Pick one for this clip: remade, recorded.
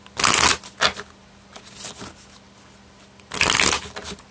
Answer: recorded